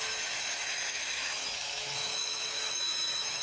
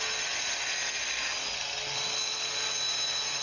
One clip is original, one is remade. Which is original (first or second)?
second